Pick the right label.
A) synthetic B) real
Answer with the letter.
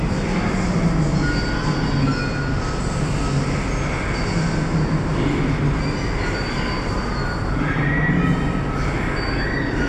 B